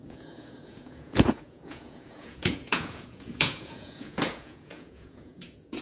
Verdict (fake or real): fake